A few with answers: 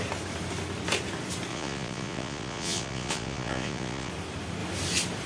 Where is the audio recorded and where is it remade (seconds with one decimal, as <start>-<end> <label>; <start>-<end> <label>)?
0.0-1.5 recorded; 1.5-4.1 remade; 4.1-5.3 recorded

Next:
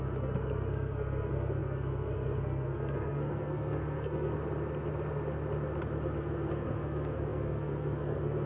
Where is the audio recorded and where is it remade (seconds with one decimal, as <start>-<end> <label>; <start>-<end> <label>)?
0.0-4.3 remade; 4.3-6.2 recorded; 6.2-8.5 remade

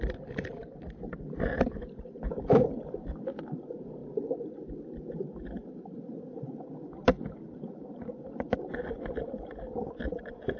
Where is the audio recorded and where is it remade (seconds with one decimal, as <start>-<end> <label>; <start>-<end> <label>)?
0.0-10.6 recorded

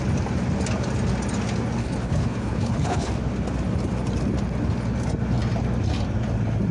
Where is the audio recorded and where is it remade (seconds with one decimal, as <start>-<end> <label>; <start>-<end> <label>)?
0.0-1.8 recorded; 1.8-3.1 remade; 3.1-6.7 recorded

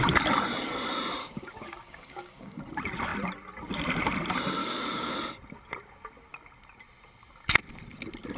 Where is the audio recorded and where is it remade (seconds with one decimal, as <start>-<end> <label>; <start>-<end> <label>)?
0.0-1.2 recorded; 1.2-2.6 remade; 2.6-4.6 recorded; 4.6-5.2 remade; 5.2-8.4 recorded

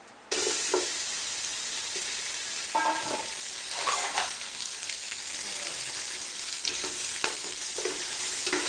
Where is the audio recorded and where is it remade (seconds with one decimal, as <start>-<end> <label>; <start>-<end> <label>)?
0.0-3.4 recorded; 3.4-5.3 remade; 5.3-6.3 recorded; 6.3-7.6 remade; 7.6-8.7 recorded

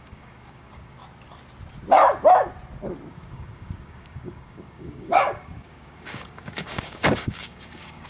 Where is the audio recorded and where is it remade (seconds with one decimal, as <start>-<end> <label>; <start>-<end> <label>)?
0.0-1.0 remade; 1.0-3.1 recorded; 3.1-8.1 remade

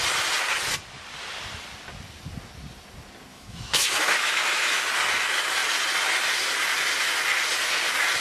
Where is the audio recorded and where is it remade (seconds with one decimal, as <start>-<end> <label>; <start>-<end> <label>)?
0.0-3.3 recorded; 3.3-4.8 remade; 4.8-8.2 recorded